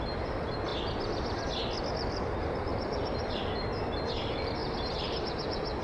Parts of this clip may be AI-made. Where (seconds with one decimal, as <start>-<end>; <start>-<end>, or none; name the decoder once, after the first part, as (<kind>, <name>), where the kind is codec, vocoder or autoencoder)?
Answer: 4.6-5.2 (vocoder, BigVGAN v2)